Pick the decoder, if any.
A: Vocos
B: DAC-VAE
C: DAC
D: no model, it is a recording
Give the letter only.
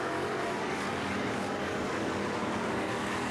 C